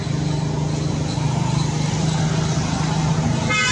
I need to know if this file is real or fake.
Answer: real